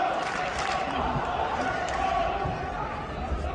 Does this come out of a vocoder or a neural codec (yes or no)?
no